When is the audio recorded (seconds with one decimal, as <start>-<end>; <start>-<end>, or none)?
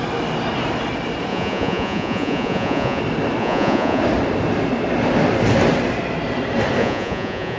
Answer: 0.0-1.3; 3.0-3.4; 4.0-6.8